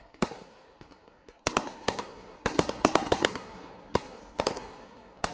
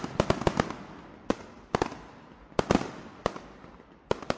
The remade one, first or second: first